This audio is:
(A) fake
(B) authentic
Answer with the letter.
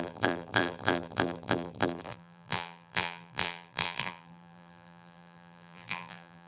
A